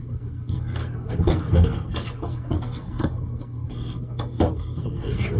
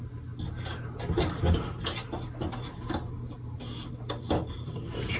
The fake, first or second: first